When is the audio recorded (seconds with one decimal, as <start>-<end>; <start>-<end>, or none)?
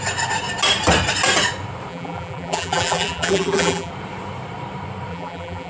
0.0-1.9; 3.9-5.1